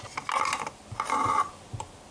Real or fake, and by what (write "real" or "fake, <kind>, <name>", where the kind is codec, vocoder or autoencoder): real